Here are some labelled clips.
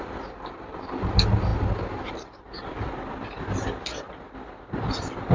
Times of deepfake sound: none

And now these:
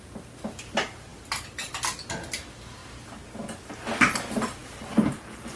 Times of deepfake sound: none

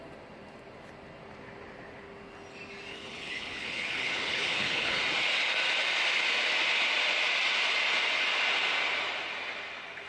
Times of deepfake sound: 2.9-5.0

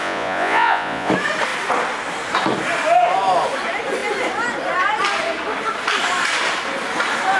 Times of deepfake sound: 0.0-1.1

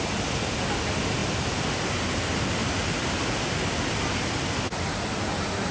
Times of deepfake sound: 2.6-3.6

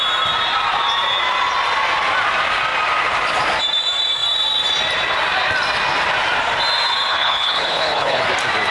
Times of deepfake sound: 7.1-8.2

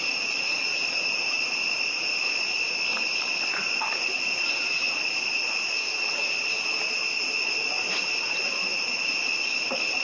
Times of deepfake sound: 0.0-1.6; 2.2-10.0